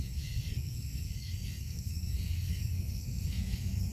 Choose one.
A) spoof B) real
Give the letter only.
A